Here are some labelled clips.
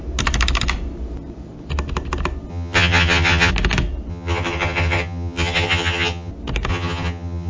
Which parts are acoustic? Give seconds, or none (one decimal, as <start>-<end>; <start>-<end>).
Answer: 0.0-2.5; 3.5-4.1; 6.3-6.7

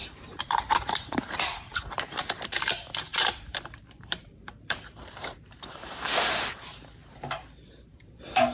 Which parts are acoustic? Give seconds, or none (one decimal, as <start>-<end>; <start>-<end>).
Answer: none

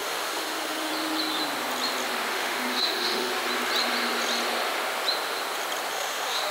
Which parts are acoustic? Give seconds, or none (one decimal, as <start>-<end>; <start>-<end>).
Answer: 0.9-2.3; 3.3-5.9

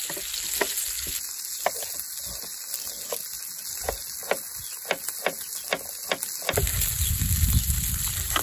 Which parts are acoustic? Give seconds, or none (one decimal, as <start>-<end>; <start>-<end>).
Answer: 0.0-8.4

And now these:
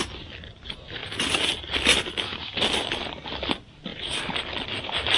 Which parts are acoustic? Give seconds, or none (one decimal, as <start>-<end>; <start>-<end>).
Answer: 0.0-5.2

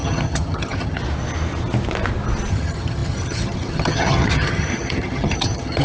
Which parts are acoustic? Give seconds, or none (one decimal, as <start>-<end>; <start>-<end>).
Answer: 1.0-2.5